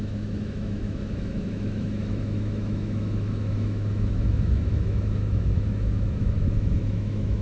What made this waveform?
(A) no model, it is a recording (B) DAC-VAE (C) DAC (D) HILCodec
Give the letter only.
B